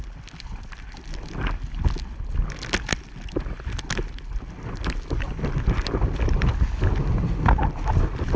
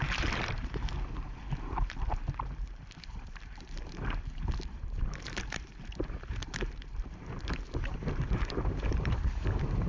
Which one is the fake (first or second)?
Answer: second